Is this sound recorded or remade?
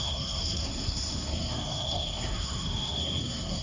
remade